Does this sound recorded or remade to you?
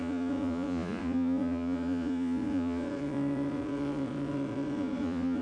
remade